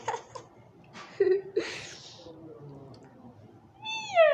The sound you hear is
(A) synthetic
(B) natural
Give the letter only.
B